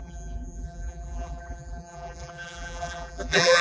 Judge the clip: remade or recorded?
remade